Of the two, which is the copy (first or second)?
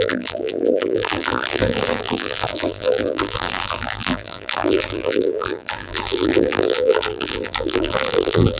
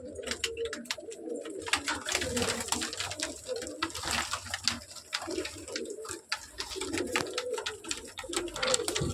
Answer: first